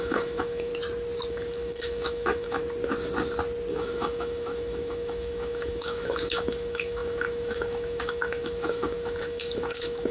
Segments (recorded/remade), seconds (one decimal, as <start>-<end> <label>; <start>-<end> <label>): 0.0-0.7 remade; 0.7-1.3 recorded; 1.3-2.6 remade; 2.6-3.7 recorded; 3.7-10.1 remade